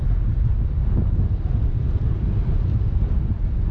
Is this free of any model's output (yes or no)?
yes